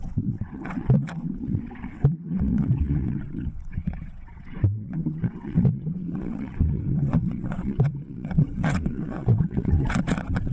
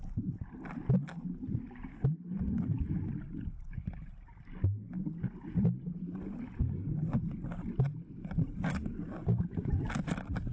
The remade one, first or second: first